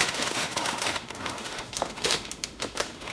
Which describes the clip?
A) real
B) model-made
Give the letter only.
B